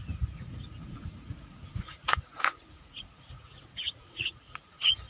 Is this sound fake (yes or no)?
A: yes